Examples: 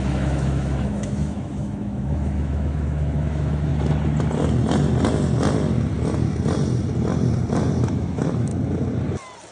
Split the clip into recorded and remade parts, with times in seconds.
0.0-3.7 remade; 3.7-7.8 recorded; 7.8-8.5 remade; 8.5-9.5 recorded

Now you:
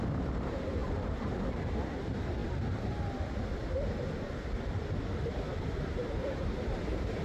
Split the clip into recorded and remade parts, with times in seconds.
0.0-7.2 remade